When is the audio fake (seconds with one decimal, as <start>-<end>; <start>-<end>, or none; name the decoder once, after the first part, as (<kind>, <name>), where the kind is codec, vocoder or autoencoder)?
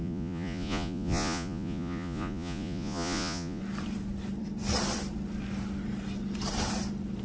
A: 0.0-3.6 (vocoder, Vocos)